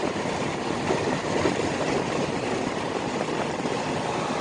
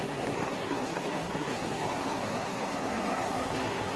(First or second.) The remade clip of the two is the second